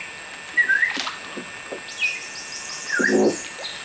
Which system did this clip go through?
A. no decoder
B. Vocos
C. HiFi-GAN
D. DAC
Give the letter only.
A